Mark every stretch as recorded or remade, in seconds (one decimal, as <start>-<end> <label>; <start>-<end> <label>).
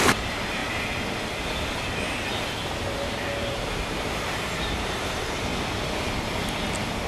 0.0-0.6 remade; 0.6-3.5 recorded; 3.5-5.5 remade; 5.5-7.1 recorded